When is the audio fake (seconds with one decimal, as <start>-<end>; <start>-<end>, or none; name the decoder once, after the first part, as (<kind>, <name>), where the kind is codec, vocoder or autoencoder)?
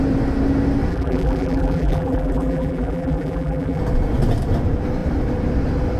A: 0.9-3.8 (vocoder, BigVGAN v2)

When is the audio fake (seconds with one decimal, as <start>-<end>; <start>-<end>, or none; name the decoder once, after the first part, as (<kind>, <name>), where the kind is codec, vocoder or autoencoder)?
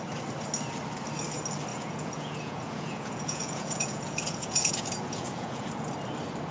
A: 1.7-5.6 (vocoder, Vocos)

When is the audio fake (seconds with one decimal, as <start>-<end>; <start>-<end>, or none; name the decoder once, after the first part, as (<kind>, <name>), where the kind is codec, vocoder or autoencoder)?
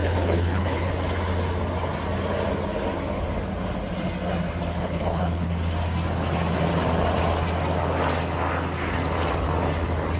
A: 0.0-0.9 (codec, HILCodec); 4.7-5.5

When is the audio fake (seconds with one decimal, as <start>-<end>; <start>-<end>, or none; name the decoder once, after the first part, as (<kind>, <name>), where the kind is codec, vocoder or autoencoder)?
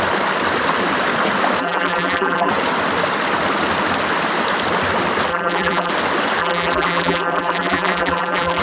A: 1.6-2.5 (vocoder, BigVGAN v2); 5.3-5.9; 6.4-8.6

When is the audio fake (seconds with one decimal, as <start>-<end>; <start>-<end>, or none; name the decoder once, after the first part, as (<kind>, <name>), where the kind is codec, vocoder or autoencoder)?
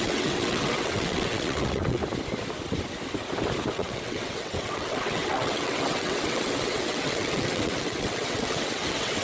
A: 0.0-2.0 (vocoder, WaveNeXt); 3.7-9.2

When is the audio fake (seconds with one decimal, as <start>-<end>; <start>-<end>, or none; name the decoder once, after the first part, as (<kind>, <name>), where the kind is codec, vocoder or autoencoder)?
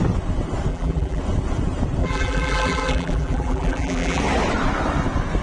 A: 0.7-1.2 (vocoder, BigVGAN v2); 2.0-4.2